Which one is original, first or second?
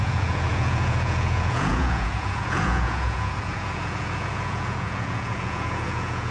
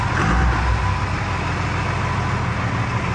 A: second